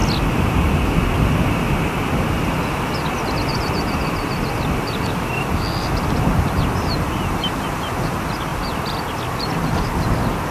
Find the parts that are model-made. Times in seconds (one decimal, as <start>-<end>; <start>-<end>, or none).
3.5-5.6; 8.5-9.2